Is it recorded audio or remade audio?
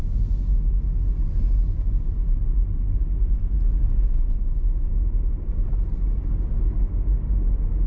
recorded